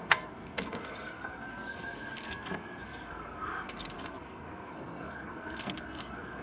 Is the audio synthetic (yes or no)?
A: yes